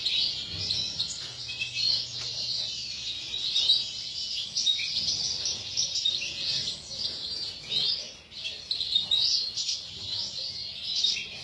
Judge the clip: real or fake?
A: real